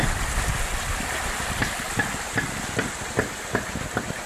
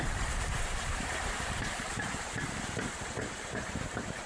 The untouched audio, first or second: first